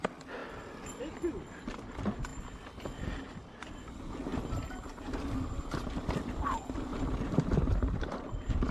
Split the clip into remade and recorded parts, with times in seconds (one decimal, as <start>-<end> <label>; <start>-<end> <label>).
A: 0.0-4.3 recorded; 4.3-5.3 remade; 5.3-6.9 recorded; 6.9-8.7 remade